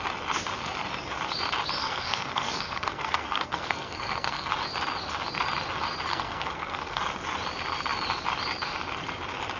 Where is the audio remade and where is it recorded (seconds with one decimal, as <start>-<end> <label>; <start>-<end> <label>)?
0.0-1.8 recorded; 1.8-4.5 remade; 4.5-6.1 recorded; 6.1-7.0 remade; 7.0-9.6 recorded